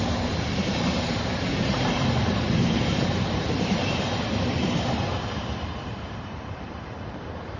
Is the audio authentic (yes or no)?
no